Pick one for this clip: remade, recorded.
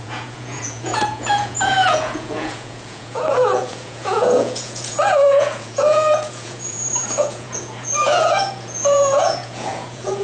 remade